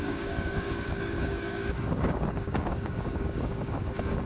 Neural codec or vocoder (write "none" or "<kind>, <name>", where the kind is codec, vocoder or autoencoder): codec, DAC